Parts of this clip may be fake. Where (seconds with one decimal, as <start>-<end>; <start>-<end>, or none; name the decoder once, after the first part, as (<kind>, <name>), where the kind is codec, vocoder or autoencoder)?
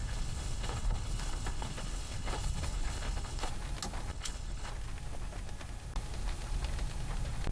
0.0-3.5 (codec, HILCodec); 4.1-4.7